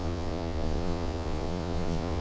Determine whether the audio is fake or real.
fake